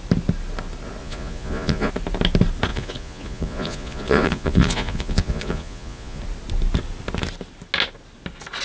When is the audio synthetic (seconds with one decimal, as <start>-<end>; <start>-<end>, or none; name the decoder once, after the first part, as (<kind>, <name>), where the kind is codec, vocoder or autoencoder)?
1.0-1.9 (vocoder, Vocos); 2.7-6.2